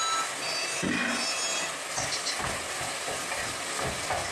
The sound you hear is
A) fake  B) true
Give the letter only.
B